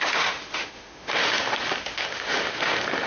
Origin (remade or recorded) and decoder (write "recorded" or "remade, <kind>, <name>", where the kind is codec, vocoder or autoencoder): remade, autoencoder, DAC-VAE